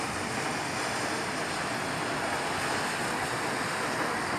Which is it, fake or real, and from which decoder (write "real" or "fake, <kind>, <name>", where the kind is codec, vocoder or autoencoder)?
real